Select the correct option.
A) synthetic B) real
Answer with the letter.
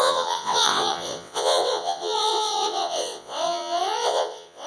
A